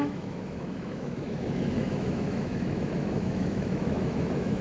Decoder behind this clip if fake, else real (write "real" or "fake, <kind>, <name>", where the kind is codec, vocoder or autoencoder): fake, autoencoder, DAC-VAE